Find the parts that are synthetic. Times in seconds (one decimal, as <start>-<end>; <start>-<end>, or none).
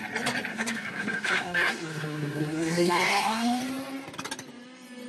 0.5-3.6